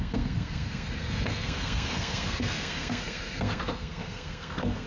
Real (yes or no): no